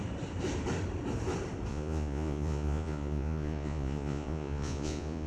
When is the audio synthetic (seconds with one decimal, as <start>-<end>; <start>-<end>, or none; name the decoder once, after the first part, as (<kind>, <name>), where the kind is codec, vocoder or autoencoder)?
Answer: 1.7-5.3 (vocoder, Vocos)